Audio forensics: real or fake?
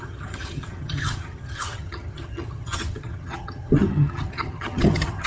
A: fake